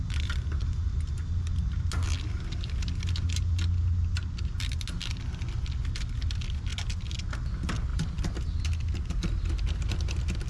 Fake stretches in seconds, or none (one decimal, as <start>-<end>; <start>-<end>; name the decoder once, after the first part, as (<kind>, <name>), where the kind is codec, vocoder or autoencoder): 7.9-8.4 (vocoder, BigVGAN v2)